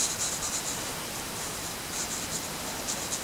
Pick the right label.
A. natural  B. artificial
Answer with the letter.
A